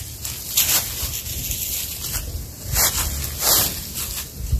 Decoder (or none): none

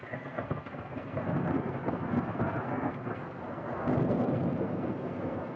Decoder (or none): codec, SNAC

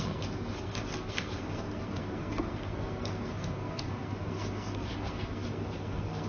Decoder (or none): codec, SNAC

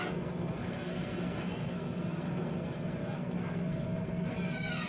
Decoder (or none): codec, SNAC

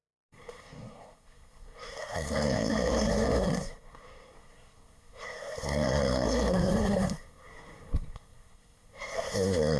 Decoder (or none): codec, SNAC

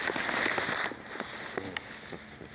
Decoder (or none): none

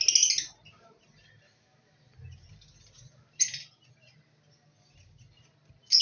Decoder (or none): none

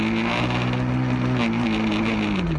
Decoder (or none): none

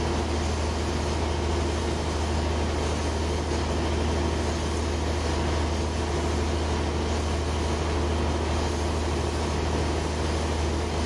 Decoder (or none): none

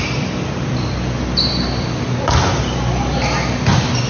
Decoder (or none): none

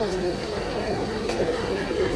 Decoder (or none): codec, SNAC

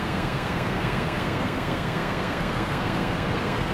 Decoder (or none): codec, SNAC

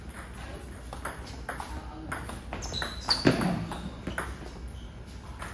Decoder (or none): none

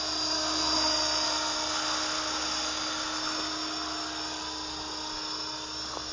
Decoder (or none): none